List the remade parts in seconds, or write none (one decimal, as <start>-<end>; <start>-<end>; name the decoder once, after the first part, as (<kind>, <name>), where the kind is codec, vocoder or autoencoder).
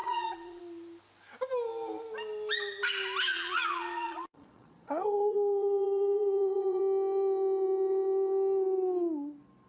0.0-0.6 (vocoder, Vocos); 3.3-6.8